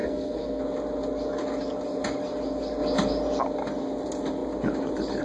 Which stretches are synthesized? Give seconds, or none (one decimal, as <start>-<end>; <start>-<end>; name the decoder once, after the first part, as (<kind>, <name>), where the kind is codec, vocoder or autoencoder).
0.0-0.6 (codec, SNAC)